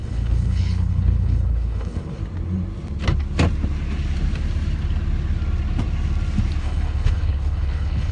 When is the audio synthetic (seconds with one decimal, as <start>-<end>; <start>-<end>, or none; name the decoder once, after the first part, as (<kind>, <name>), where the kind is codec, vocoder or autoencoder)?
0.0-2.2 (codec, HILCodec); 6.6-8.1